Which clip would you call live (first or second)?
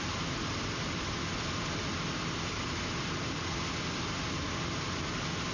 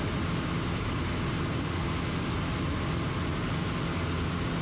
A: second